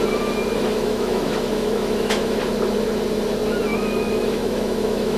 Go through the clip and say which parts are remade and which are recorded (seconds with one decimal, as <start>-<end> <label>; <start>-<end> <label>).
0.0-0.5 recorded; 0.5-2.4 remade; 2.4-3.7 recorded; 3.7-5.2 remade